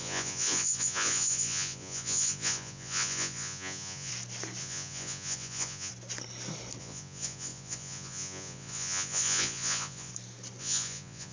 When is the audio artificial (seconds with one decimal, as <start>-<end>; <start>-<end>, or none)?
0.0-4.1; 4.6-5.9; 6.8-10.1; 10.6-11.3

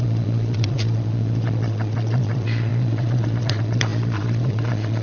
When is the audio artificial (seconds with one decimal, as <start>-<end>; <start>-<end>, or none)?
0.0-5.0

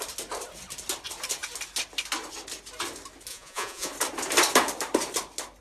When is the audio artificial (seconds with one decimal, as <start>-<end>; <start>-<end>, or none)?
3.3-3.9

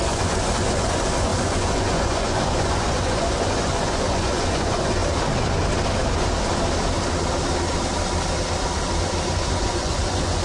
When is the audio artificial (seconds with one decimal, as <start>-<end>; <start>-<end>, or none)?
0.0-5.0; 9.3-10.4

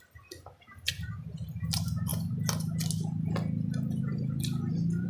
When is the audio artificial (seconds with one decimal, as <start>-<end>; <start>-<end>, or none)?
none

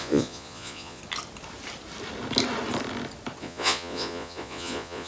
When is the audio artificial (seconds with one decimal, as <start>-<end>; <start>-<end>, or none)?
0.0-1.0; 3.4-5.1

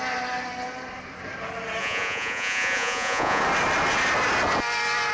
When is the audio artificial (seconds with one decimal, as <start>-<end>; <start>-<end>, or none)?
1.8-3.4

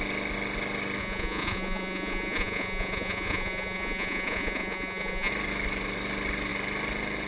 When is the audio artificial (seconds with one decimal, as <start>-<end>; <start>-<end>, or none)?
1.0-5.3